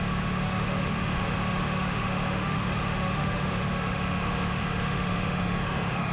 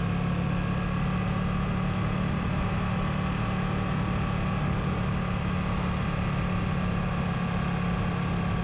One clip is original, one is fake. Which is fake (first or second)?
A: first